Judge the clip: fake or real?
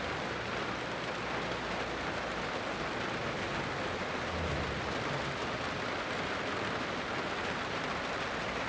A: real